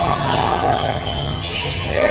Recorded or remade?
remade